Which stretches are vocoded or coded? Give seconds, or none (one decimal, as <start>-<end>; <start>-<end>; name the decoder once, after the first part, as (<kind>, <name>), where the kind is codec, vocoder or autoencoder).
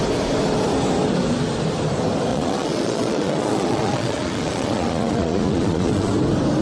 2.3-6.1 (vocoder, Vocos)